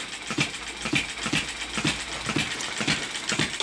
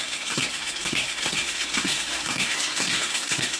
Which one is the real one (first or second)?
first